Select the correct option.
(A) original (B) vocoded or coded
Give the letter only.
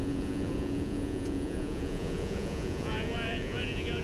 B